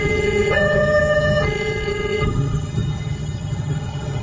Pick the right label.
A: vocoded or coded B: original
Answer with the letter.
A